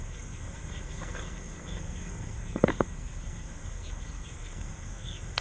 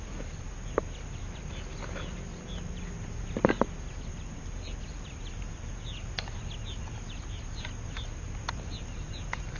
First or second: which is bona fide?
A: second